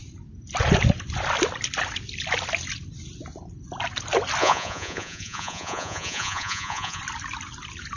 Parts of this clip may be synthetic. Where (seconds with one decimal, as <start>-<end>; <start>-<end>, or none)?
4.4-7.0